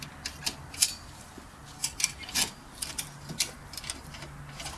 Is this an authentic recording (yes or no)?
yes